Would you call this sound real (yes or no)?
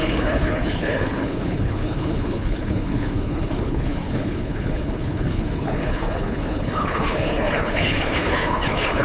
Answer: no